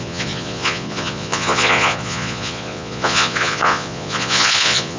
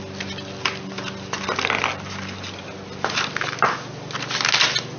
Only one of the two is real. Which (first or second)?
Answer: second